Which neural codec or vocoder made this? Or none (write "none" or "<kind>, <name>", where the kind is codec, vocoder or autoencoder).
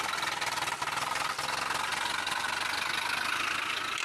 none